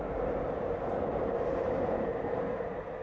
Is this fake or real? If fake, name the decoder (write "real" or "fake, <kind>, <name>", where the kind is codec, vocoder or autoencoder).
real